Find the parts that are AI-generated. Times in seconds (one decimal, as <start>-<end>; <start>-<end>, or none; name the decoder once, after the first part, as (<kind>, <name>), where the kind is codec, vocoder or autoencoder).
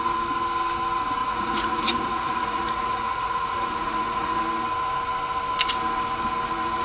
1.2-4.4 (vocoder, Vocos)